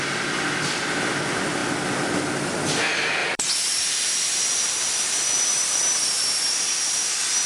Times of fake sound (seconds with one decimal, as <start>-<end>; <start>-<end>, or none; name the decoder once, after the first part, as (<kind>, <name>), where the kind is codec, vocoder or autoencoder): 3.2-5.8 (vocoder, BigVGAN v2)